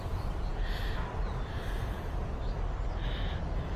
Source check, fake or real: real